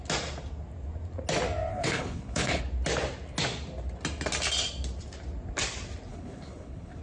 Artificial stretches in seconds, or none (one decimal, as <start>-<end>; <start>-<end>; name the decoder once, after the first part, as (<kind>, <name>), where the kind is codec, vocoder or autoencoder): 1.7-2.6 (codec, HILCodec); 6.1-7.0